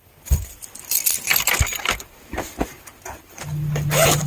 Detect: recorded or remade recorded